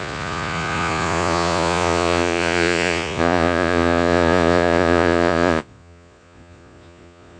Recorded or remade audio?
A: remade